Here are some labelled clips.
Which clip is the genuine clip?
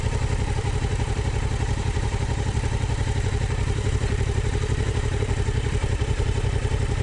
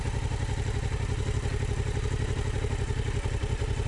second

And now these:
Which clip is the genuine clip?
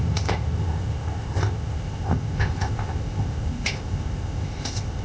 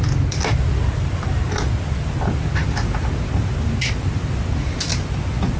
second